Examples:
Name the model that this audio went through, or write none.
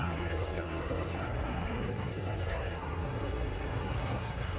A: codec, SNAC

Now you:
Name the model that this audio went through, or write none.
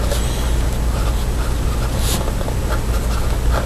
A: none